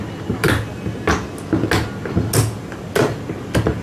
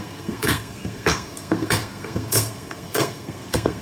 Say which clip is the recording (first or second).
first